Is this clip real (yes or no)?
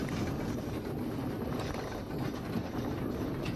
yes